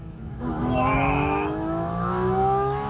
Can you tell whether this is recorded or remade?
remade